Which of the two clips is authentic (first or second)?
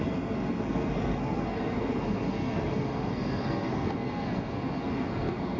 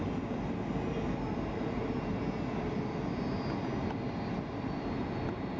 second